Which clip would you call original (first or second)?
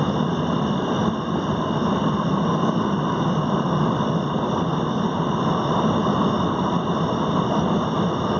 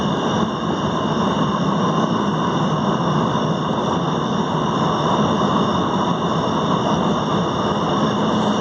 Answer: second